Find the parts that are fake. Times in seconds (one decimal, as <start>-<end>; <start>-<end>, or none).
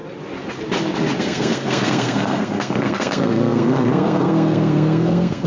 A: 1.2-5.5